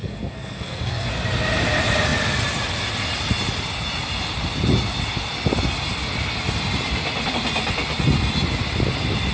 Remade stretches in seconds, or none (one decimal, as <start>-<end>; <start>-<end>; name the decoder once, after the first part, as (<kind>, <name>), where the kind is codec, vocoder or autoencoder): 0.0-1.1 (codec, SNAC)